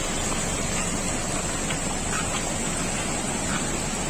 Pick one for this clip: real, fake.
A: real